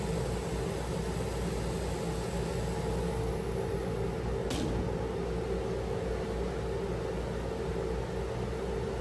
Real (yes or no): yes